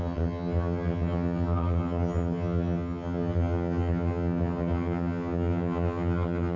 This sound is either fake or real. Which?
fake